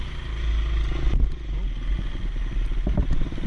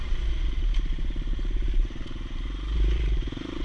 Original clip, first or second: first